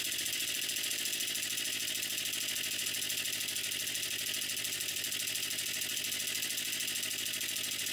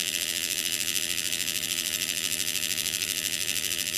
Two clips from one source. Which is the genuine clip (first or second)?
first